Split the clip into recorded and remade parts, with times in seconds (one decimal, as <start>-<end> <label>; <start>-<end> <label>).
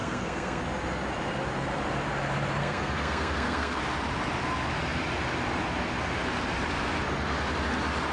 0.0-0.6 remade; 0.6-2.6 recorded; 2.6-3.8 remade; 3.8-8.1 recorded